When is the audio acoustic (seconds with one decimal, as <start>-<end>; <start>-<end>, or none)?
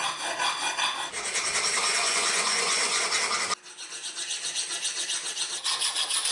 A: 0.0-1.8; 3.0-6.3